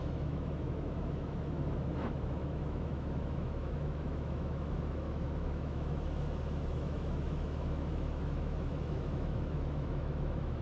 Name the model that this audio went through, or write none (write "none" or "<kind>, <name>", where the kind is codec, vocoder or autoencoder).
autoencoder, DAC-VAE